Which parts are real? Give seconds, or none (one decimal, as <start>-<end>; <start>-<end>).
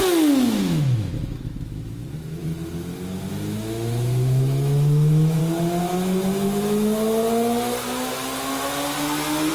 2.5-3.3; 5.4-9.5